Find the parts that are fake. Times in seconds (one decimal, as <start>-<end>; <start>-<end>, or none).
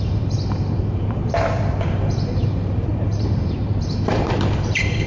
0.0-1.2; 1.9-5.1